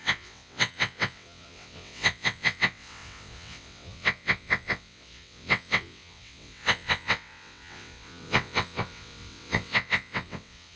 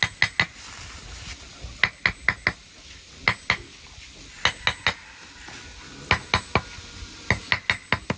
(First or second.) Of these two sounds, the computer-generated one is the first